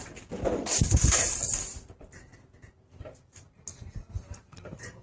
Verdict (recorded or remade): recorded